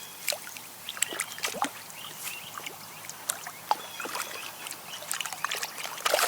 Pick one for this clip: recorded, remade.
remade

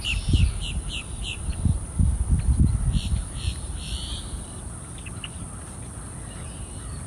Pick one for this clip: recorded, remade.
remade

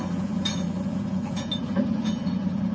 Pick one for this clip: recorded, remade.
remade